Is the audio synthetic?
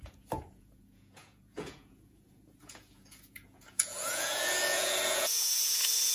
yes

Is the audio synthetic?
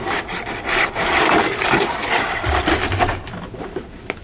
yes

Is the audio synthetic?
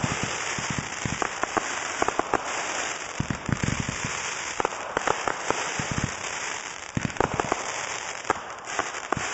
yes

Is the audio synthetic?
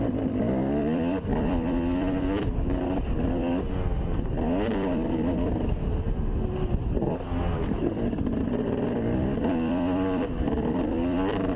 yes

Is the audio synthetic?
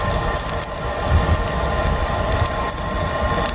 no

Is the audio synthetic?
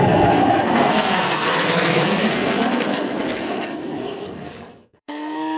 yes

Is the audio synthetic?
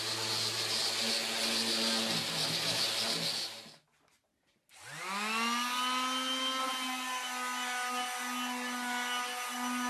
no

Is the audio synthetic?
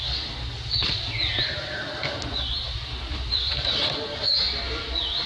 no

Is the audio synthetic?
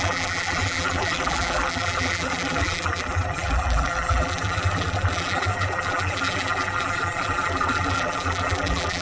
yes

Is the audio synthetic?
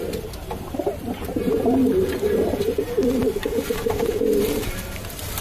yes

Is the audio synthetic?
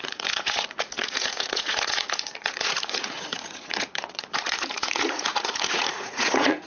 yes